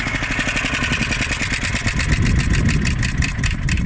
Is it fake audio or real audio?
real